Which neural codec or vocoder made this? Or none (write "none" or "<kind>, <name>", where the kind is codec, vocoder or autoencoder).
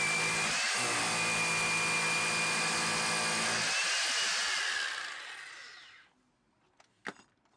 none